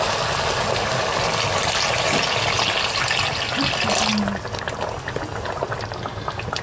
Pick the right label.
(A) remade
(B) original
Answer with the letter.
B